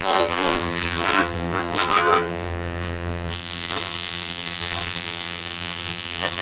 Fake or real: fake